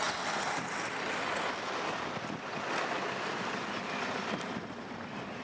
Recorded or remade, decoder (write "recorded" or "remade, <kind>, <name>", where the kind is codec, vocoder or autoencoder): recorded